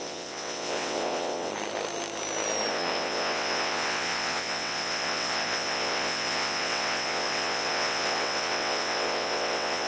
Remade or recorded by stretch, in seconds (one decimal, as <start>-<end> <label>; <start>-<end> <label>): 0.0-1.5 remade; 1.5-2.7 recorded; 2.7-9.9 remade